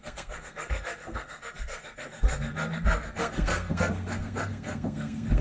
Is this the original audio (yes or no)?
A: no